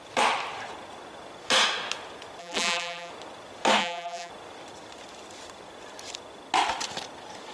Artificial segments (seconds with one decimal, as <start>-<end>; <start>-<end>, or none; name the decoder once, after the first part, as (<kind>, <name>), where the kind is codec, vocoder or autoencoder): 2.4-3.1 (vocoder, BigVGAN v2); 3.8-4.3